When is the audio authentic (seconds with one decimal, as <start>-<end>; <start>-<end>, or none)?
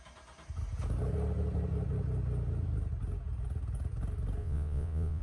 0.0-4.4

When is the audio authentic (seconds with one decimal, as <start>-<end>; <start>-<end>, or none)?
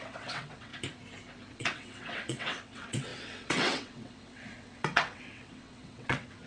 0.7-1.5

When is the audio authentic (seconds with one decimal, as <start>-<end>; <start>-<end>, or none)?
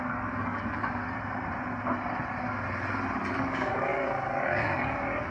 1.0-3.3